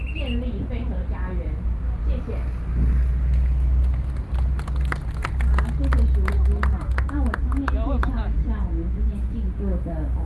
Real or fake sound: real